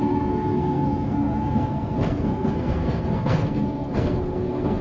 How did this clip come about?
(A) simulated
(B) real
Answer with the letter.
A